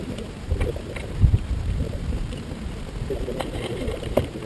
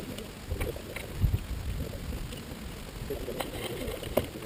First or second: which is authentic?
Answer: second